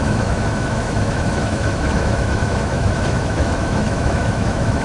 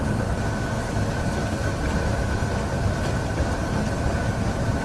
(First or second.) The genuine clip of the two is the second